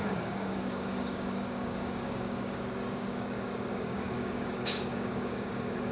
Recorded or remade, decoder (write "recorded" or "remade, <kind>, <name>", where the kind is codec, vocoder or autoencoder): remade, codec, DAC